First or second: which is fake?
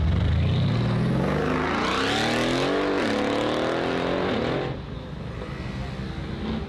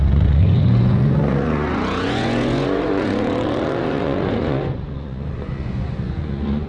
second